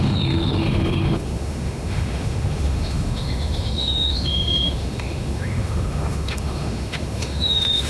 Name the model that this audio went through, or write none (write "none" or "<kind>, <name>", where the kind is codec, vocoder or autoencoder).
autoencoder, DAC-VAE